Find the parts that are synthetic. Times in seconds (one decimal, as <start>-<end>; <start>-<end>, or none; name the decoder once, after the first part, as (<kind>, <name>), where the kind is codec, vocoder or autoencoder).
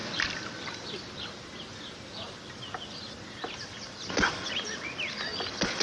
none